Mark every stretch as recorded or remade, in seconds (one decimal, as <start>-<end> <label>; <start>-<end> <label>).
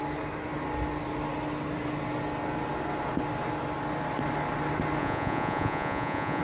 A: 0.0-5.0 recorded; 5.0-6.4 remade